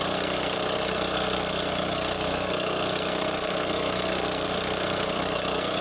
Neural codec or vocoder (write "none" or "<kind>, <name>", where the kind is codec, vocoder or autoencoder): codec, SNAC